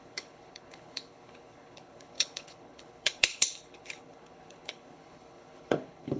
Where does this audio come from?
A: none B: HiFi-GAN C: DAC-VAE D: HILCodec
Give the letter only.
D